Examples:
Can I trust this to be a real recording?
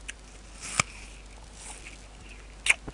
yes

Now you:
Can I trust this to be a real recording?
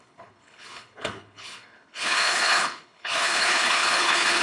no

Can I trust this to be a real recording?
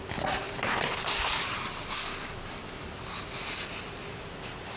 yes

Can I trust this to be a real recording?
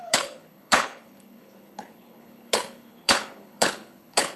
no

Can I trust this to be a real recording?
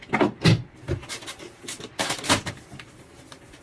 yes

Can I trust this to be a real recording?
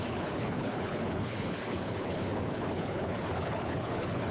no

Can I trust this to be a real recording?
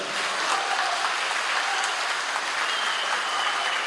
yes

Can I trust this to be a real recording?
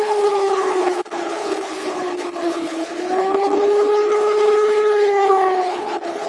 no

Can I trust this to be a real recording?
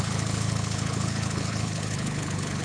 no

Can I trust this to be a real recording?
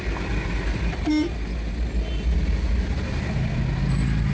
yes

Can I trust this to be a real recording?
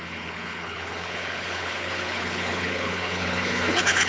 no